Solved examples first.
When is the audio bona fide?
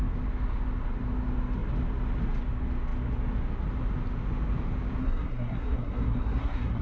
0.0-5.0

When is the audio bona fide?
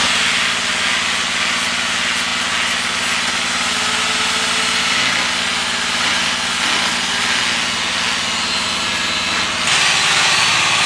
0.0-10.9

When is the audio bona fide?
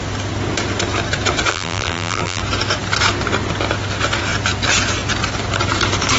0.0-1.5; 2.4-6.2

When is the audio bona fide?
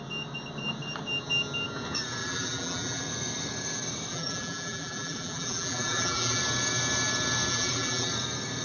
0.0-2.2; 3.0-4.1; 6.4-7.5; 8.1-8.6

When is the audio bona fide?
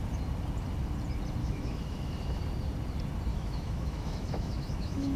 0.0-1.4; 2.4-3.3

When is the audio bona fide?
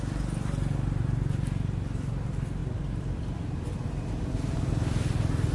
0.0-5.5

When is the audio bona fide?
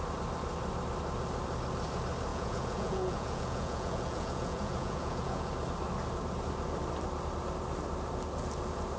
0.0-2.3; 5.5-9.0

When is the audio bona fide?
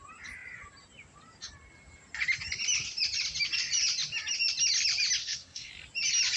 0.0-5.2; 5.7-6.4